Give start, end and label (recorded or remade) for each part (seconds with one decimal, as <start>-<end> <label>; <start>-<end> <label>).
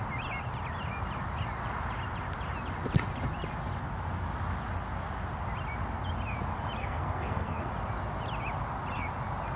0.0-6.8 recorded; 6.8-7.7 remade; 7.7-9.6 recorded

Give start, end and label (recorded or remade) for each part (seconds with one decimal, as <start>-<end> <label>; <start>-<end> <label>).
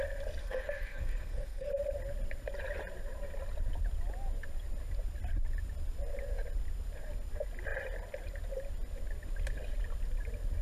0.0-0.4 recorded; 0.4-1.7 remade; 1.7-10.6 recorded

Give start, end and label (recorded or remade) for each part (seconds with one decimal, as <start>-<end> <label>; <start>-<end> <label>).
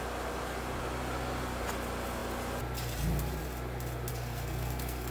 0.0-4.1 recorded; 4.1-5.1 remade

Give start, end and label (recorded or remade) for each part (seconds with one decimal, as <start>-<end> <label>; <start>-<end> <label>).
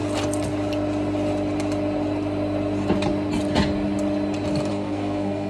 0.0-4.7 recorded; 4.7-5.5 remade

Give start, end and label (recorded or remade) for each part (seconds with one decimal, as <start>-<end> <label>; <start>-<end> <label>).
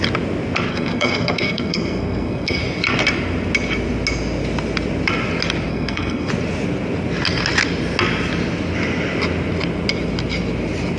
0.0-0.7 recorded; 0.7-2.6 remade; 2.6-5.7 recorded; 5.7-6.3 remade; 6.3-11.0 recorded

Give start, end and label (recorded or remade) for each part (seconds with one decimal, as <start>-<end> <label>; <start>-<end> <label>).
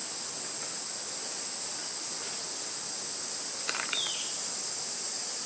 0.0-5.5 recorded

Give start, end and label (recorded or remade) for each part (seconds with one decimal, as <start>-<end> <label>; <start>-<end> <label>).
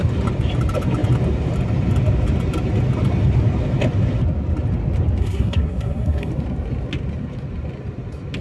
0.0-5.2 recorded; 5.2-6.3 remade; 6.3-8.4 recorded